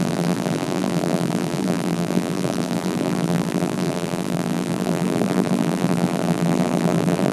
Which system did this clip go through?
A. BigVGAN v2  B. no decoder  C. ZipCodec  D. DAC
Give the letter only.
A